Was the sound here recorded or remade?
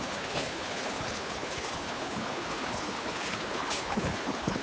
remade